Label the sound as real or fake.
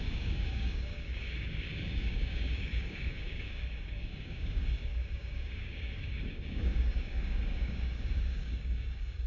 fake